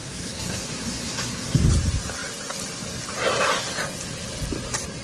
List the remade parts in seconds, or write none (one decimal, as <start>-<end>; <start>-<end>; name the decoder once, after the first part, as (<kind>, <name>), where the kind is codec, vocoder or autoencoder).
0.0-1.7 (codec, SNAC)